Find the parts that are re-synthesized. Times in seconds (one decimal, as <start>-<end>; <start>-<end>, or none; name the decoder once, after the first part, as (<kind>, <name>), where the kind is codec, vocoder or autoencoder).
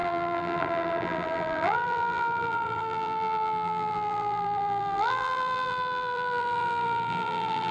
0.0-7.7 (vocoder, BigVGAN v2)